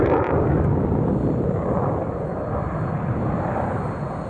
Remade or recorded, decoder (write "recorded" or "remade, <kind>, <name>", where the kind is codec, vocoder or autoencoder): recorded